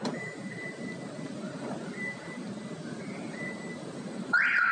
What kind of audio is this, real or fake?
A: real